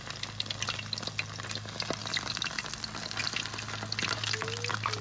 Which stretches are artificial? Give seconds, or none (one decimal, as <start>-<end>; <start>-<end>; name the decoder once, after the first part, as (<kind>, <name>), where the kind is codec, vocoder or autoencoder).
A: none